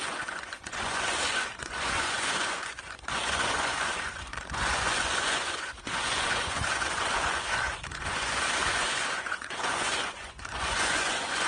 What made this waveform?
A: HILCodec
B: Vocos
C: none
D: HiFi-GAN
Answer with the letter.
B